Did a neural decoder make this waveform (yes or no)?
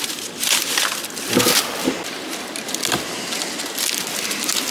no